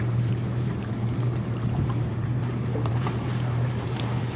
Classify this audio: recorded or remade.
remade